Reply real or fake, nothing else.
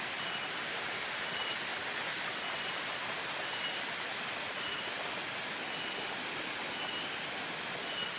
real